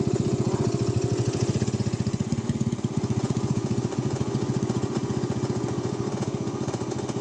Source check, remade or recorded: remade